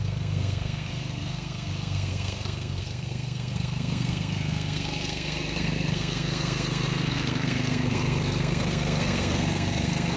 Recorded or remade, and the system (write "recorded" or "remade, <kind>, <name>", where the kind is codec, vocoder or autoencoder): remade, codec, SNAC